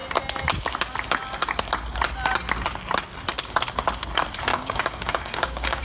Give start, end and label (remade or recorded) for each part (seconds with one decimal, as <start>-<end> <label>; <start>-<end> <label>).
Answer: 0.0-4.5 recorded; 4.5-5.8 remade

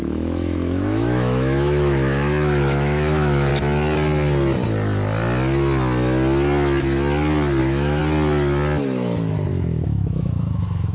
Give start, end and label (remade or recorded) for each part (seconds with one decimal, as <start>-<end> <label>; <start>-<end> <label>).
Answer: 0.0-3.5 remade; 3.5-7.6 recorded; 7.6-8.0 remade; 8.0-9.5 recorded; 9.5-10.9 remade

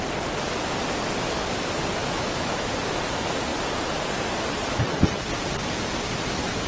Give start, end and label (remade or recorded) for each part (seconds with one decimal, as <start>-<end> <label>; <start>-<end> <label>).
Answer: 0.0-2.0 recorded; 2.0-2.7 remade; 2.7-6.7 recorded

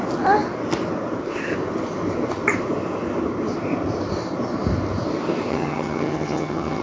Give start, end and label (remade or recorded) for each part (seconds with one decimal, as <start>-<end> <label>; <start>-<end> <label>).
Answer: 0.0-5.5 recorded; 5.5-6.8 remade

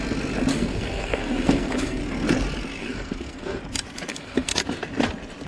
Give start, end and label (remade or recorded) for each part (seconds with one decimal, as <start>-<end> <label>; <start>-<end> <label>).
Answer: 0.0-0.5 recorded; 0.5-2.0 remade; 2.0-2.8 recorded; 2.8-3.6 remade; 3.6-4.1 recorded; 4.1-4.6 remade; 4.6-5.5 recorded